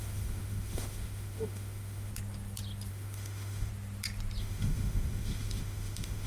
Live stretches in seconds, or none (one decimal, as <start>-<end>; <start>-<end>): 2.1-2.9; 3.7-4.4